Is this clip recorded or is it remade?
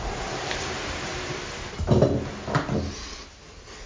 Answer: recorded